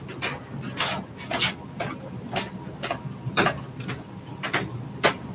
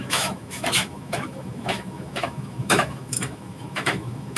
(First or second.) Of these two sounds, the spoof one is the second